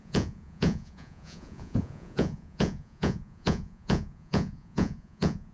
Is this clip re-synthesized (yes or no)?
yes